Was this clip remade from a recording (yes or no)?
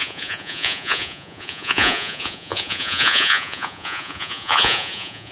yes